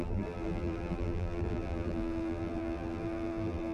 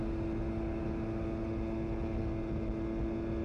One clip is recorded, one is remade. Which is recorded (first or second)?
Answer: second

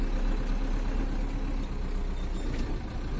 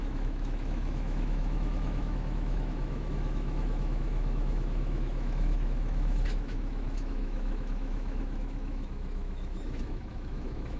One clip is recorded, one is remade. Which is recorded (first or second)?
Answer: first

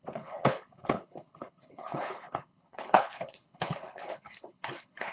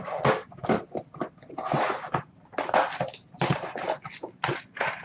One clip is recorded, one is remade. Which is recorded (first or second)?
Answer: second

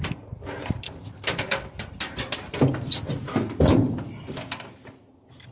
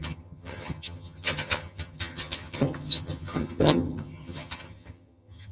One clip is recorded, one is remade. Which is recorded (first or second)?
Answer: first